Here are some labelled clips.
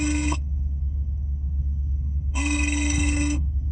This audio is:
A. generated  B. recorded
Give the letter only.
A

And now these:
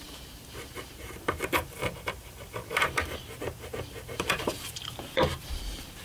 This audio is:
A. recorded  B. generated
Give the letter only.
B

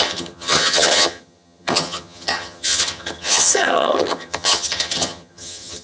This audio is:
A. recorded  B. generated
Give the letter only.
B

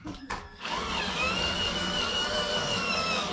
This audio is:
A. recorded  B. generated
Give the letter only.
B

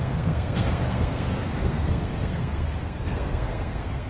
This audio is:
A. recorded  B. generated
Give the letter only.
B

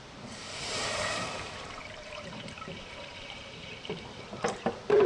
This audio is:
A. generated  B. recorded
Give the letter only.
A